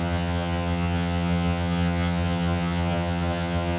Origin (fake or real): fake